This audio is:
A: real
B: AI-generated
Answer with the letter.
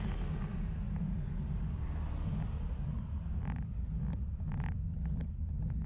A